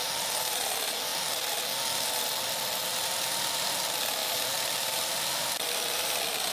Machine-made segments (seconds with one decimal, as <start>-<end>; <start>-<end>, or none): 4.2-6.5